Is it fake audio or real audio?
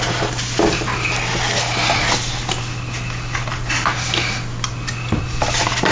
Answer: real